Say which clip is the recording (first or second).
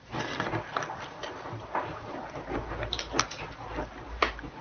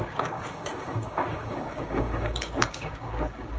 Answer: first